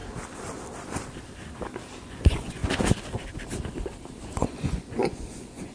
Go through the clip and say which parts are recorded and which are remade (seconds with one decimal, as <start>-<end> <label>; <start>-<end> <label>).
0.0-2.0 recorded; 2.0-2.6 remade; 2.6-4.4 recorded; 4.4-5.7 remade